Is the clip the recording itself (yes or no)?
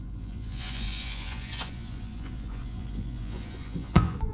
no